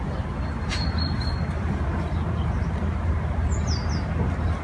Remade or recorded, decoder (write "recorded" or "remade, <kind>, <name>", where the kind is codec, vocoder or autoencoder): recorded